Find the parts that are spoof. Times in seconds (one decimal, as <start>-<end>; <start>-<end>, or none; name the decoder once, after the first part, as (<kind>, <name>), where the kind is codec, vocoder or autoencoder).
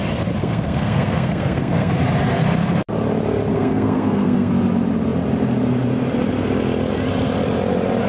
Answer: 0.4-1.9 (codec, SNAC); 3.5-4.5